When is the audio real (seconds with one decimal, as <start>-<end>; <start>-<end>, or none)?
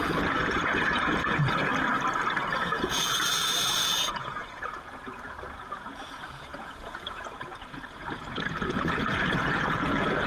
1.7-2.6